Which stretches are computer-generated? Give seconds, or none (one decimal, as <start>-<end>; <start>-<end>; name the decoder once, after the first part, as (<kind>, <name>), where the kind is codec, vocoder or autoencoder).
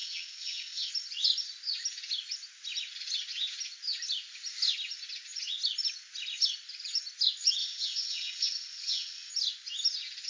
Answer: 0.0-0.9 (vocoder, WaveNeXt); 7.6-9.3